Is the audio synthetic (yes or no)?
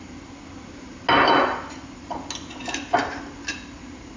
no